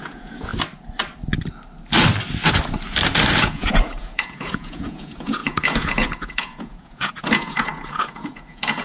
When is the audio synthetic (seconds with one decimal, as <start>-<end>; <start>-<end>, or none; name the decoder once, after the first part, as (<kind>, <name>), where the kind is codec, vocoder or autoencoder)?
0.0-0.5 (vocoder, Vocos); 3.4-8.8